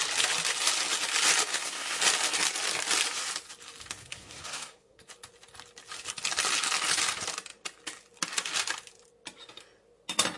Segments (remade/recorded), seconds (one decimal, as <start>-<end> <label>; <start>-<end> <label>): 0.0-1.5 recorded; 1.5-2.0 remade; 2.0-4.0 recorded; 4.0-5.1 remade; 5.1-10.4 recorded